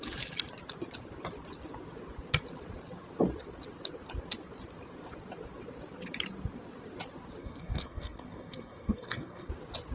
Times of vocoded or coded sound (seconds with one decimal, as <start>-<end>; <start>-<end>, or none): 7.4-9.5